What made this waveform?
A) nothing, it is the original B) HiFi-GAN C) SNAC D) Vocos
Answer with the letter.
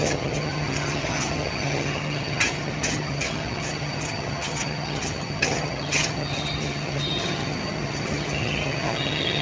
B